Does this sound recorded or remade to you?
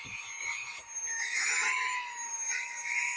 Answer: recorded